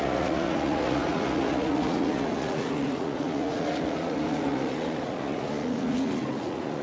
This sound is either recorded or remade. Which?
remade